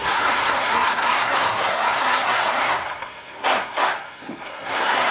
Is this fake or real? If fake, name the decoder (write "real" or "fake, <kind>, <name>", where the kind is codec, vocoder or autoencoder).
fake, codec, SNAC